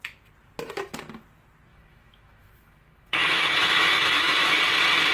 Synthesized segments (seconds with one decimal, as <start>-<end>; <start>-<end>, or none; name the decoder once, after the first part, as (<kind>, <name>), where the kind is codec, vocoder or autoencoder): 1.7-4.6 (autoencoder, DAC-VAE)